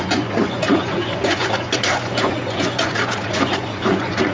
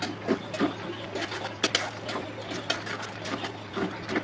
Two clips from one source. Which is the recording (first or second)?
second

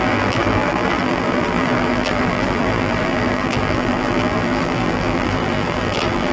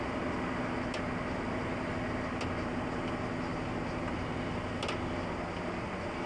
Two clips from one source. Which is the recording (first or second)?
second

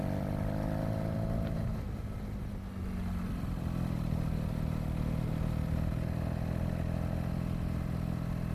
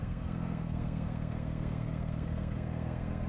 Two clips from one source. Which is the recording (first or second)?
first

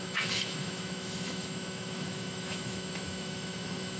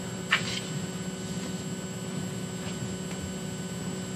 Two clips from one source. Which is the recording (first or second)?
second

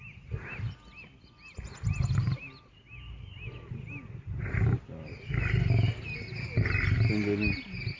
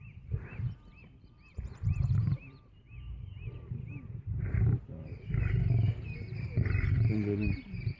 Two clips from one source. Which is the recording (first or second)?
first